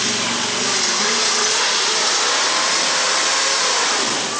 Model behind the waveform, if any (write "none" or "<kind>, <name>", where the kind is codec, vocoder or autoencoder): none